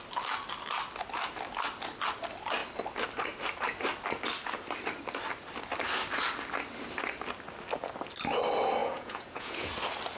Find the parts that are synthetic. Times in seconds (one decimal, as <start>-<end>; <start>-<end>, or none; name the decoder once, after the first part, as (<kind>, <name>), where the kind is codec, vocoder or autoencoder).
8.8-9.7 (vocoder, Vocos)